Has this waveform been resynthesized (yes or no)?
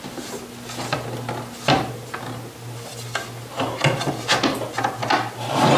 no